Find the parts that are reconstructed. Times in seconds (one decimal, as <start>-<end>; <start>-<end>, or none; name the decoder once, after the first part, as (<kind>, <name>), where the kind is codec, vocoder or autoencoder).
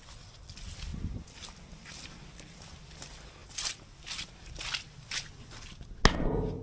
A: none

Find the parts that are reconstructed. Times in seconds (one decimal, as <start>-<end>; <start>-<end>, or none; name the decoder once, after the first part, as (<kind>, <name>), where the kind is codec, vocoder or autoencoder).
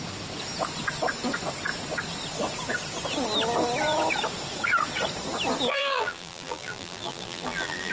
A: 5.7-7.9 (vocoder, BigVGAN v2)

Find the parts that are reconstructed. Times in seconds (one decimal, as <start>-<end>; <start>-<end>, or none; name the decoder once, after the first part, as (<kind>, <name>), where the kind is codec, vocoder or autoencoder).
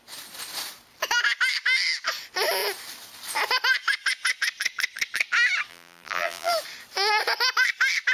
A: 5.7-6.5 (vocoder, BigVGAN v2)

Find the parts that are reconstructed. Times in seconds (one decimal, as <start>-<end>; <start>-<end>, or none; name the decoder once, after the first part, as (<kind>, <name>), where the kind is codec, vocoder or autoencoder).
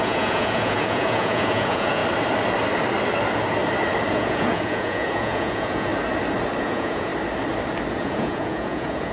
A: 0.0-2.0 (vocoder, Vocos); 4.1-5.9; 6.6-7.1; 7.9-9.1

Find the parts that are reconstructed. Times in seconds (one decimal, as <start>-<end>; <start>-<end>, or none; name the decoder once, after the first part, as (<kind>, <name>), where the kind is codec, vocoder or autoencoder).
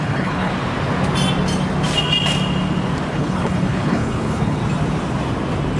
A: 0.0-0.5 (codec, HILCodec); 3.1-4.6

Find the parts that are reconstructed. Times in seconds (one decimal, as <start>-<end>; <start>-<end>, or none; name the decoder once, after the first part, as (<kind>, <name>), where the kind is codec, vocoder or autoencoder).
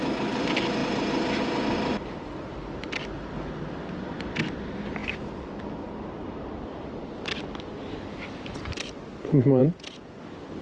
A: 9.6-10.2 (vocoder, Vocos)